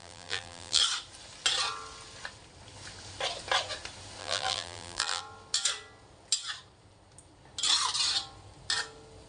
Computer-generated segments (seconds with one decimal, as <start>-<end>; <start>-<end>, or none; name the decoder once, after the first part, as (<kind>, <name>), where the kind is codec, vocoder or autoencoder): 0.0-0.8 (vocoder, BigVGAN v2); 4.2-5.2